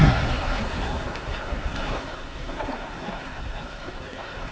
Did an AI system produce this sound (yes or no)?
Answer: yes